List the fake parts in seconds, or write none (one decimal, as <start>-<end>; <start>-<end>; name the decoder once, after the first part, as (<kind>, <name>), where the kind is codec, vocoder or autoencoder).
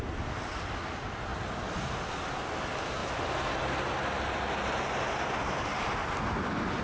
none